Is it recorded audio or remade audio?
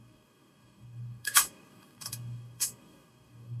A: remade